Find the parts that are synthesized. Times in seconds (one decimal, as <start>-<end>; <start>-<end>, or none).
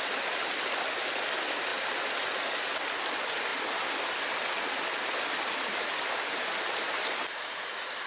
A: none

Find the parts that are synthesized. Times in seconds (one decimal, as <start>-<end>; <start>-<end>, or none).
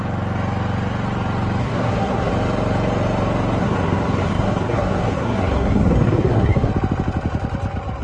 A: 1.6-2.3; 3.6-6.7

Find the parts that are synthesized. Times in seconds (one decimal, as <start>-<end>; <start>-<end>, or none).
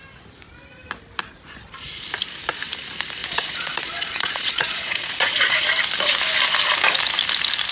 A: 3.2-5.6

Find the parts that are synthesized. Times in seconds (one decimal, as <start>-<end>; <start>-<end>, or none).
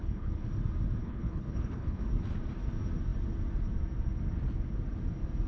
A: 0.0-0.5; 1.0-2.0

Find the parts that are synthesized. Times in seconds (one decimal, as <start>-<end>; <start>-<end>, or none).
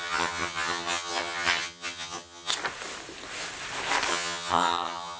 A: 0.0-2.5; 4.1-5.2